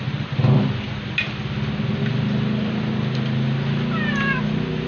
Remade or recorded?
recorded